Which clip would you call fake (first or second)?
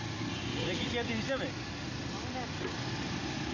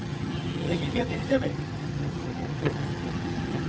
second